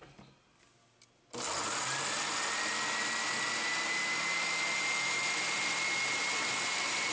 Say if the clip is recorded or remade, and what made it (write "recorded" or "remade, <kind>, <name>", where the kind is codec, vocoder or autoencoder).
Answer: recorded